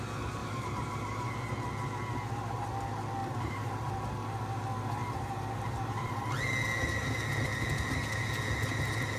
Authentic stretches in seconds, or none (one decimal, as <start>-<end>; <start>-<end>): 0.0-0.4; 1.3-3.2; 3.9-5.0; 6.3-9.2